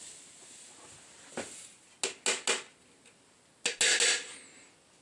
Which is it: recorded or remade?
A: recorded